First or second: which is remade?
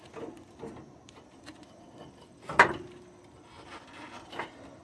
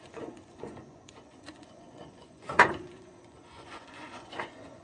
second